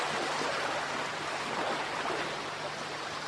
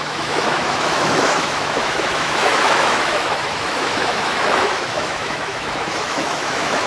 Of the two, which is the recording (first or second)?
first